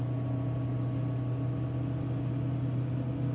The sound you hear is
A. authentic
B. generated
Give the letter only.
A